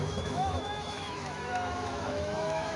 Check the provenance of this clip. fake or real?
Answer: fake